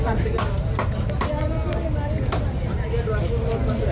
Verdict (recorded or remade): recorded